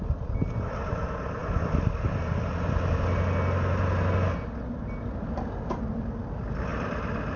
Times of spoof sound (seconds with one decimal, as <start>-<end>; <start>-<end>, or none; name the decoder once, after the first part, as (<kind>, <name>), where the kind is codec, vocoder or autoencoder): none